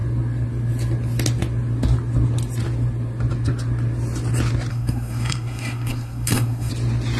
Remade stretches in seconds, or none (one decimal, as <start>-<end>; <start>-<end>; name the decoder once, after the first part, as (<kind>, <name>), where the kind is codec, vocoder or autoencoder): 4.7-6.7 (codec, SNAC)